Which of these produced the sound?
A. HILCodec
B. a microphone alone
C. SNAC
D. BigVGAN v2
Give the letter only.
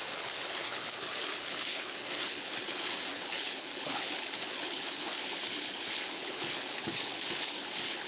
A